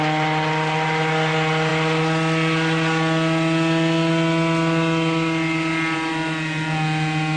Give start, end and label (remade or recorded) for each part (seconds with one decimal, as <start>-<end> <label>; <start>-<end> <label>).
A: 0.0-7.4 recorded